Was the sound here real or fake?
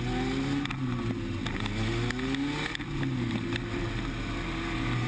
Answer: real